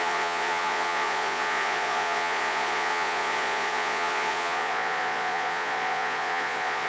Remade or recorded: remade